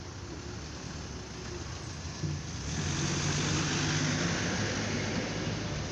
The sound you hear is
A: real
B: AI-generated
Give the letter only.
A